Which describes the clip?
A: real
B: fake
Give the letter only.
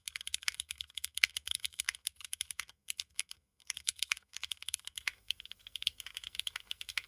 B